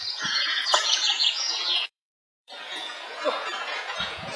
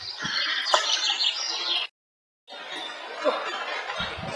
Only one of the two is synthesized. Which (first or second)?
first